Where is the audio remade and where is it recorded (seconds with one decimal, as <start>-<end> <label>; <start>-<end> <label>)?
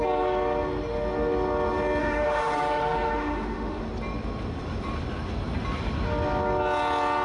0.0-2.0 recorded; 2.0-3.8 remade; 3.8-7.2 recorded